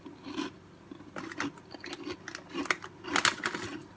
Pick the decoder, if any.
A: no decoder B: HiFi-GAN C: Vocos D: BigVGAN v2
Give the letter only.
A